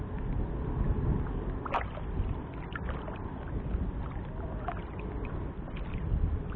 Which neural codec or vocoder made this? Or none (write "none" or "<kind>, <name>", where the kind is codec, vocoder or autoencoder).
none